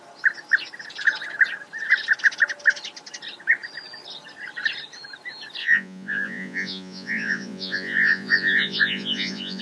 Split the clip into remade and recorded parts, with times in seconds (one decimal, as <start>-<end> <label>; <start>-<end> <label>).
0.0-5.6 recorded; 5.6-9.6 remade